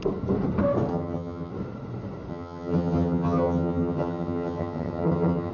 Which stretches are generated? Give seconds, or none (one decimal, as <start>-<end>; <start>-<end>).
0.9-1.5; 2.3-5.5